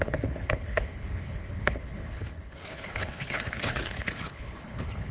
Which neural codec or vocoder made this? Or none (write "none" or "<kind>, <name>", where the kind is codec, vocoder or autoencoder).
codec, HILCodec